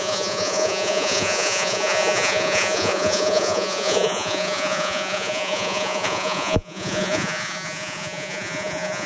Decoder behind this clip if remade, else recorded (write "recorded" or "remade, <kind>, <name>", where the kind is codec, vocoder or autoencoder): remade, vocoder, Vocos